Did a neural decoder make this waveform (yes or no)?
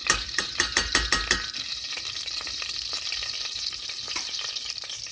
yes